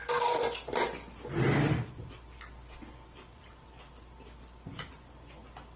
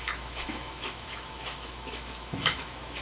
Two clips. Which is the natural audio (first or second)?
first